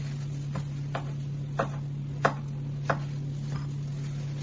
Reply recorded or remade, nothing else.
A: recorded